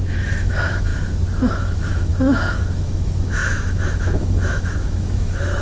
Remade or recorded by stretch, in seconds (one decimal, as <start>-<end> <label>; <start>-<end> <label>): 0.0-0.9 remade; 0.9-1.5 recorded; 1.5-5.6 remade

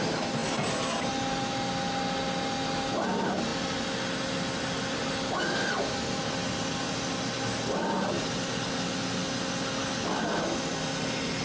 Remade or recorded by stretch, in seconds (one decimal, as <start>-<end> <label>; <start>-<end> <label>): 0.0-11.4 recorded

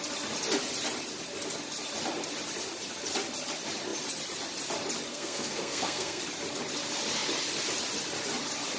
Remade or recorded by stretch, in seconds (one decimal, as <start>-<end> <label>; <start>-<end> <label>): 0.0-5.1 recorded; 5.1-6.2 remade; 6.2-8.8 recorded

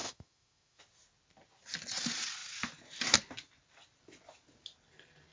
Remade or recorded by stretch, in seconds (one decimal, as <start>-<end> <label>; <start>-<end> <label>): 0.0-0.8 remade; 0.8-5.3 recorded

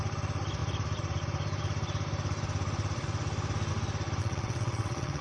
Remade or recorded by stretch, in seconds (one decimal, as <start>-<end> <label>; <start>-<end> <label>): 0.0-4.2 recorded; 4.2-5.2 remade